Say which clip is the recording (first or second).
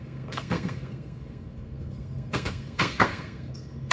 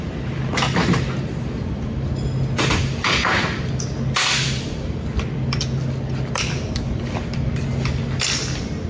second